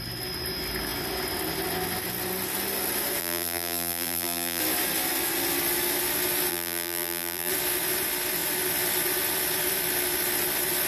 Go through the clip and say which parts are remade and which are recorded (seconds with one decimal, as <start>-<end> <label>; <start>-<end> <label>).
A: 0.0-3.2 recorded; 3.2-4.6 remade; 4.6-6.5 recorded; 6.5-7.5 remade; 7.5-10.9 recorded